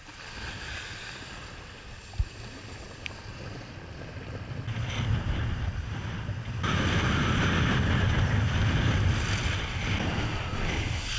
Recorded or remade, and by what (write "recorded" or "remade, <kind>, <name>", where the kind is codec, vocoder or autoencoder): recorded